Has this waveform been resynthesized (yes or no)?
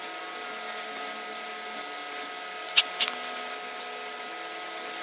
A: no